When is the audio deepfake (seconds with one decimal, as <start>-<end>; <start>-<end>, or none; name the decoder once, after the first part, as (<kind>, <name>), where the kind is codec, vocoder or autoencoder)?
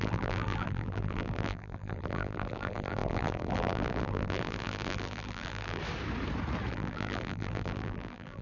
0.0-5.8 (vocoder, BigVGAN v2); 6.7-8.4